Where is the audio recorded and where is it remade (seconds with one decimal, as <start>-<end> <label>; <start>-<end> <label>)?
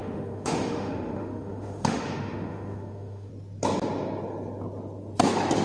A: 0.0-3.3 remade; 3.3-5.6 recorded